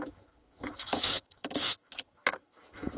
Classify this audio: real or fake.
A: fake